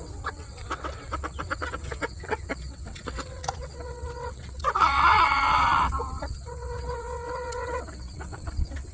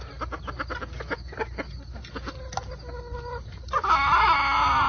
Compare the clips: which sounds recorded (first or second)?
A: second